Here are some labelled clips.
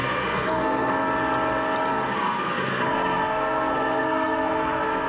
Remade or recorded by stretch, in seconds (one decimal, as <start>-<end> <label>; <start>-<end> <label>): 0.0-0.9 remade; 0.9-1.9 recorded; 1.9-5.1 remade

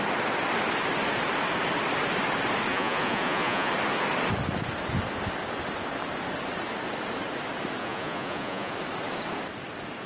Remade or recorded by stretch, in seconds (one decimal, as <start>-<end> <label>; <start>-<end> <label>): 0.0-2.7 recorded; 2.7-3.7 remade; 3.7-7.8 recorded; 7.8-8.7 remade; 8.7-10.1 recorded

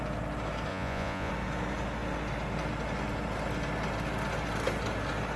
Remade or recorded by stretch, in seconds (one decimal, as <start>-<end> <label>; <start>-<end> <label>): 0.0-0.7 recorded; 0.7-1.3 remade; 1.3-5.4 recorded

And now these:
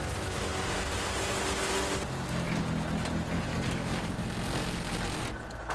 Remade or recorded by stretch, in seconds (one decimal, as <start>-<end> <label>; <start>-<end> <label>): 0.0-3.5 recorded; 3.5-4.1 remade; 4.1-5.7 recorded

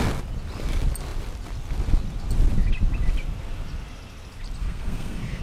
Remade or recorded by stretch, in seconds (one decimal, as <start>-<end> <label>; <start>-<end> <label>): 0.0-4.6 recorded; 4.6-5.4 remade

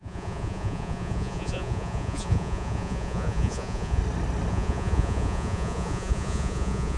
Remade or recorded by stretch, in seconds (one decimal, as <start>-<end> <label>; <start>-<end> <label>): 0.0-4.0 remade; 4.0-4.5 recorded; 4.5-7.0 remade